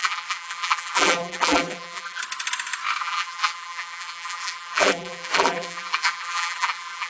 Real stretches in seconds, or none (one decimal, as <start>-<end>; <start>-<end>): 2.2-3.0